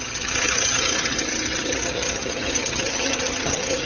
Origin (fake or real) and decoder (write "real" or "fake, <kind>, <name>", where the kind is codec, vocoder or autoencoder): fake, vocoder, HiFi-GAN